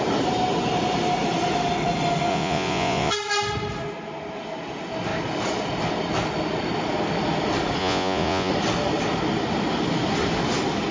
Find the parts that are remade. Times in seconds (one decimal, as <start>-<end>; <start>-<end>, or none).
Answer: 2.3-3.1; 7.8-8.5

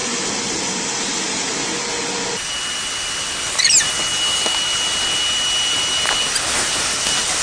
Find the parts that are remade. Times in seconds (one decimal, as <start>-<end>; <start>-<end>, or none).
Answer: none

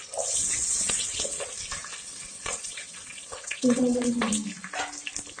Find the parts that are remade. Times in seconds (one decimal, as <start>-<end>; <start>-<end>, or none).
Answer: 0.4-1.4; 1.8-4.3